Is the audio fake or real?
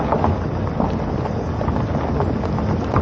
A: real